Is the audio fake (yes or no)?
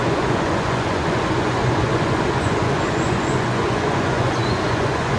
yes